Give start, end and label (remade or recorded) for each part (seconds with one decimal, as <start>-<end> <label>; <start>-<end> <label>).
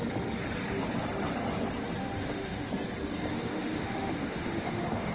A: 0.0-2.0 recorded; 2.0-2.7 remade; 2.7-3.3 recorded; 3.3-5.1 remade